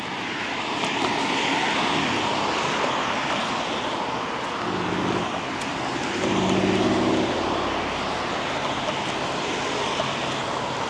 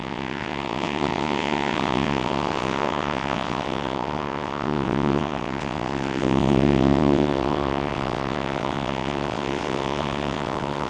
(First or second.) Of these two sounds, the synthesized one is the second